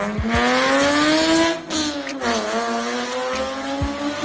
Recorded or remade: recorded